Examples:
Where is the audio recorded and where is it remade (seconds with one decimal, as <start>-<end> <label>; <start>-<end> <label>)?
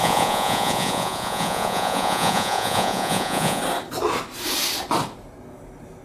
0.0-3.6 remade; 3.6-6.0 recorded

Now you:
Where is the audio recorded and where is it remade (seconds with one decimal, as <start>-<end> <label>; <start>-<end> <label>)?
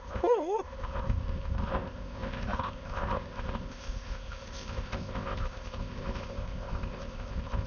0.0-7.7 remade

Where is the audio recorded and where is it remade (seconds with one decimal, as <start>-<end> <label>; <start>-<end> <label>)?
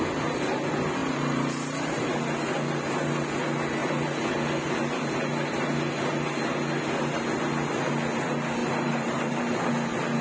0.0-1.0 recorded; 1.0-2.0 remade; 2.0-8.6 recorded; 8.6-9.7 remade; 9.7-10.2 recorded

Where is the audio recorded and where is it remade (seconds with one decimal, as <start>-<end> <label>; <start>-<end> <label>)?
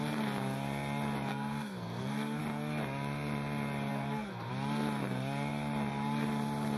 0.0-1.3 recorded; 1.3-2.4 remade; 2.4-3.9 recorded; 3.9-4.5 remade; 4.5-6.8 recorded